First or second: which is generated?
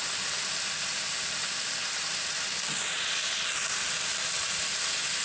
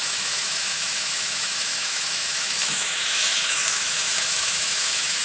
second